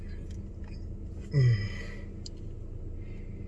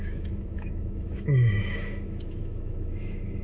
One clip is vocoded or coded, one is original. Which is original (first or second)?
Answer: first